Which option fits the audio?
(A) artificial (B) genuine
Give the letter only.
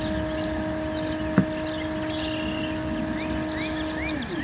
B